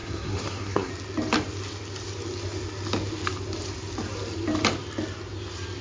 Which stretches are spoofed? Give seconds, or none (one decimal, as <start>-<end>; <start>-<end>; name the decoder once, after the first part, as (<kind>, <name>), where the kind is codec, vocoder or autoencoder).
0.0-0.9 (codec, SNAC)